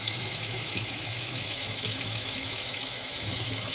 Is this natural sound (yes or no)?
no